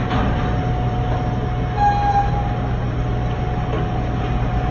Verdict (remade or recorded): recorded